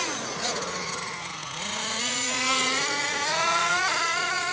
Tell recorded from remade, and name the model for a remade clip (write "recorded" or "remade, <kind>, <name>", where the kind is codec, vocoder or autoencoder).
remade, vocoder, Vocos